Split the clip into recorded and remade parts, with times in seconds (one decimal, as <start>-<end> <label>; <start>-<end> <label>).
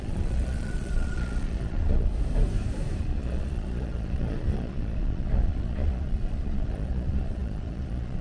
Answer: 0.0-2.1 remade; 2.1-3.0 recorded; 3.0-8.2 remade